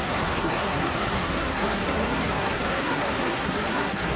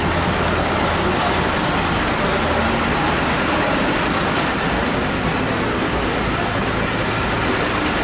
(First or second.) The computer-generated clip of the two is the first